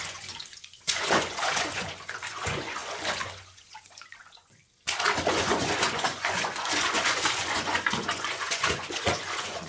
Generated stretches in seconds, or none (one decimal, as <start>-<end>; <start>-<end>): 0.0-4.6; 5.3-9.7